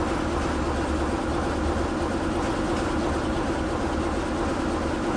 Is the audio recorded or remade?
recorded